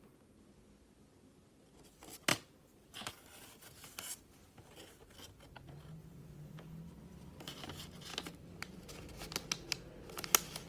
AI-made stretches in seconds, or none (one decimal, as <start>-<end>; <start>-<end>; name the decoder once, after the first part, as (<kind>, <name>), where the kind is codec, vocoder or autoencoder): 6.0-6.8 (vocoder, Vocos)